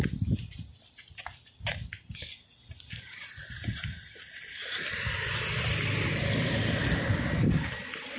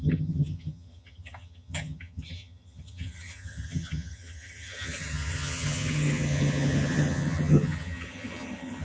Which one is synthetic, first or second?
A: second